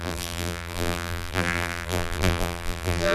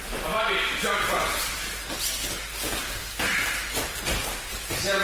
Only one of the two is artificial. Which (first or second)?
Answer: first